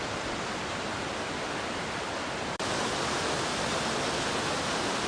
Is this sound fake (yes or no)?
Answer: no